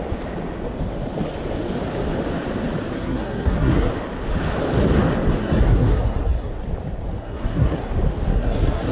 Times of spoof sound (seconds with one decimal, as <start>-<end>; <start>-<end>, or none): 2.9-3.9; 5.4-6.5; 7.2-7.9; 8.3-8.9